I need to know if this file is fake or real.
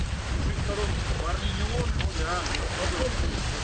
real